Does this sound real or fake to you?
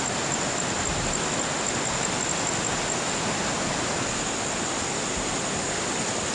real